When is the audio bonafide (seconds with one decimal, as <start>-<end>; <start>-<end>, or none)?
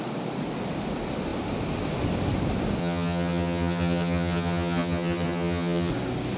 0.0-2.8; 5.9-6.4